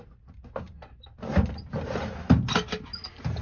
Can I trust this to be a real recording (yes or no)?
yes